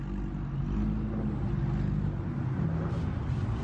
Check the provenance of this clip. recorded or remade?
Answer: recorded